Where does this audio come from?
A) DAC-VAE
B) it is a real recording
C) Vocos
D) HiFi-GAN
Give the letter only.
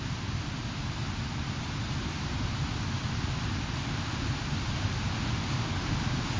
B